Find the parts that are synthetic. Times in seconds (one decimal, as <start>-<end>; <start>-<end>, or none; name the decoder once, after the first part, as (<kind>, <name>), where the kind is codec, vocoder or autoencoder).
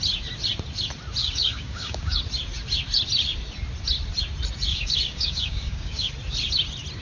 1.2-2.2 (codec, DAC); 4.7-6.1